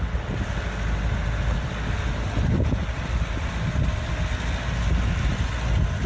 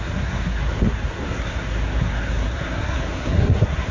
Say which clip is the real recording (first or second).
first